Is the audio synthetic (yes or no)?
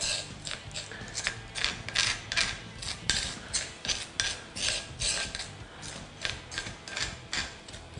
no